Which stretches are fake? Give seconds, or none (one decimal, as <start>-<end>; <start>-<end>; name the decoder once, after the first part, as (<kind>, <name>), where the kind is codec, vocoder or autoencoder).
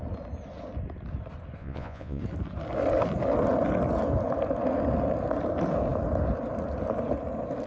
1.6-2.2 (vocoder, Vocos)